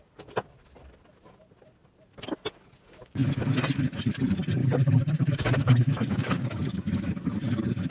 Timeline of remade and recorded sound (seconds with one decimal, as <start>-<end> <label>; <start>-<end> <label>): 0.0-4.6 recorded; 4.6-7.1 remade; 7.1-7.9 recorded